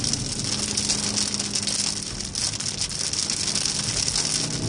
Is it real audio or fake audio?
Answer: real